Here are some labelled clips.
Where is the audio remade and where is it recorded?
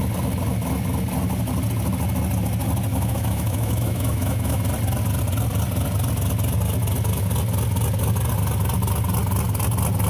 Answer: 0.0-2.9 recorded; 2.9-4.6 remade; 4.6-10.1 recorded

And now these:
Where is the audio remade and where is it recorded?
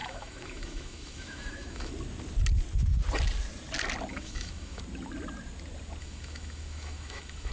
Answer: 0.0-1.9 remade; 1.9-4.1 recorded; 4.1-4.8 remade; 4.8-6.0 recorded; 6.0-7.5 remade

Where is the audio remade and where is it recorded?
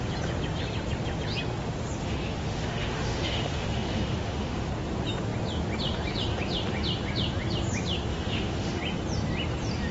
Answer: 0.0-2.0 recorded; 2.0-4.7 remade; 4.7-8.1 recorded; 8.1-8.8 remade; 8.8-9.9 recorded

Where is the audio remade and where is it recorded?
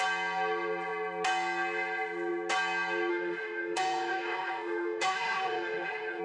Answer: 0.0-3.1 recorded; 3.1-6.2 remade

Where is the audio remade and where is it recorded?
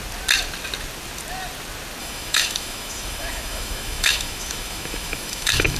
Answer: 0.0-2.0 recorded; 2.0-5.8 remade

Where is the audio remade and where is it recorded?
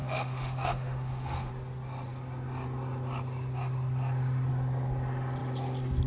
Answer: 0.0-1.5 remade; 1.5-6.1 recorded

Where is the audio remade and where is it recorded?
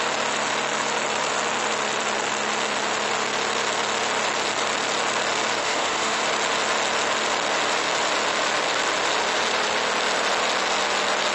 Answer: 0.0-5.6 recorded; 5.6-6.2 remade; 6.2-11.3 recorded